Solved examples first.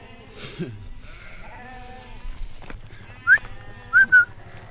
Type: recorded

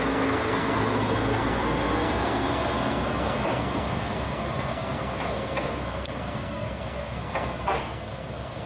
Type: remade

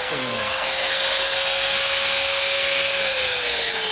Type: remade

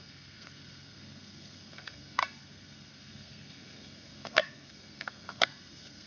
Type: remade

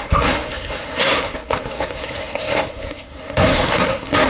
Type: remade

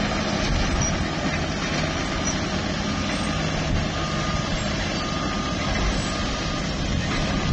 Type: recorded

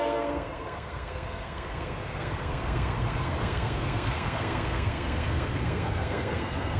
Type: remade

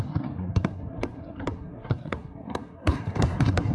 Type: remade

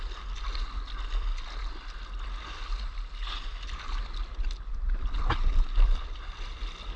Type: recorded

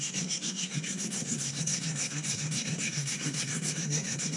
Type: remade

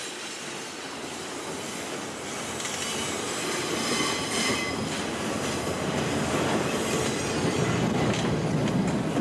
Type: recorded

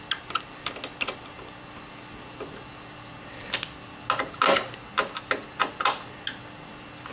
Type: recorded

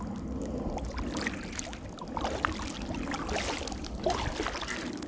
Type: recorded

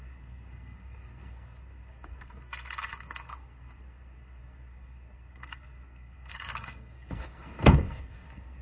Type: remade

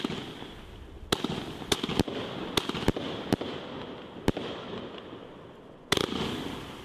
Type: recorded